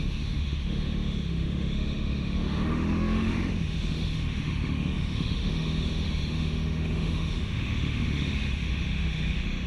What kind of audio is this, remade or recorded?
remade